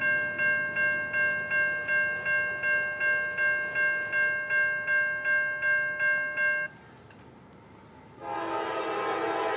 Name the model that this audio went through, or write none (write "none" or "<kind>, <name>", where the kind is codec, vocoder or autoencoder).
none